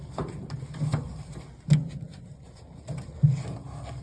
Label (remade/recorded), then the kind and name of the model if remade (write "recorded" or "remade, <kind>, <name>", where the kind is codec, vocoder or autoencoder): recorded